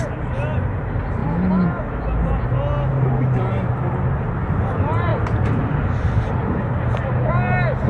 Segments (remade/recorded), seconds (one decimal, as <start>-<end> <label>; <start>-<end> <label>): 0.0-7.9 recorded